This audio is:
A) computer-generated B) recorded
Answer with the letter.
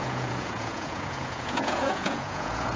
A